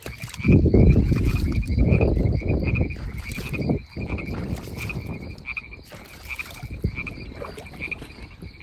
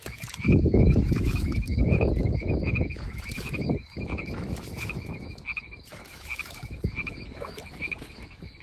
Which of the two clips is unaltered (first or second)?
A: first